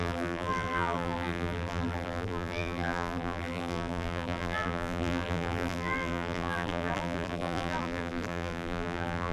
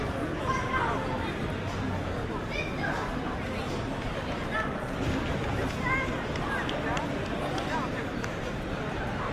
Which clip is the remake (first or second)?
first